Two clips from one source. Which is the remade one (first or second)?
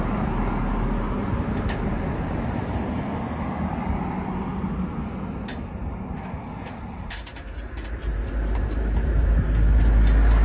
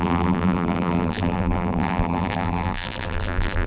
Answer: second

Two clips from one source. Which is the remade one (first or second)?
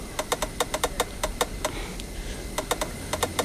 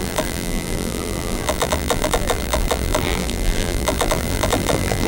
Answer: second